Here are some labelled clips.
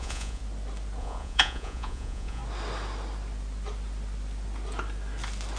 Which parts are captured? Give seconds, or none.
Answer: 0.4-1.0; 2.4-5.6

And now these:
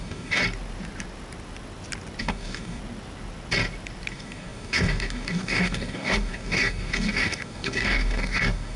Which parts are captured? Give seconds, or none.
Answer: 0.4-2.2; 2.8-4.1

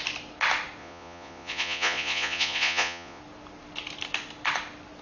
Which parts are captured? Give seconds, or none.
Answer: 0.0-0.8; 3.2-5.0

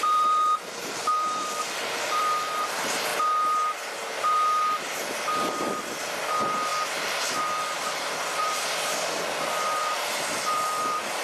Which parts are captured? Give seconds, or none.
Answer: 3.1-6.0

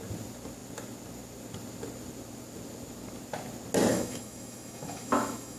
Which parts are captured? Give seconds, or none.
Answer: 0.0-3.9

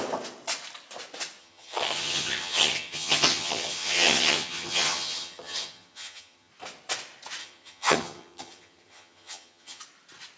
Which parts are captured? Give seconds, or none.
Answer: 0.0-1.4; 6.5-7.4; 9.8-10.4